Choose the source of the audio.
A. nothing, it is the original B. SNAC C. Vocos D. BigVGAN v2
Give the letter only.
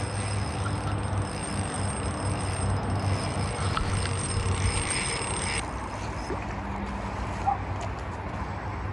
A